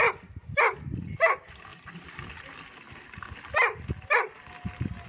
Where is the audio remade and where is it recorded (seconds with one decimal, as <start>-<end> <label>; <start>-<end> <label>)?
0.0-5.1 recorded